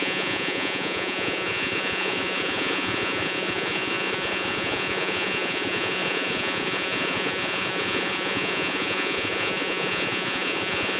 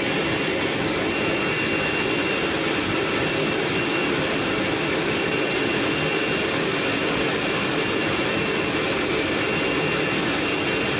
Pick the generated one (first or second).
first